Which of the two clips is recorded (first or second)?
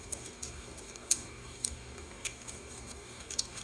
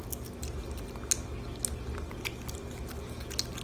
second